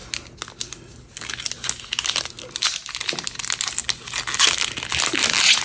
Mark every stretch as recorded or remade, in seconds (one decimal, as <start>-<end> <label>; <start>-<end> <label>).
0.0-5.6 recorded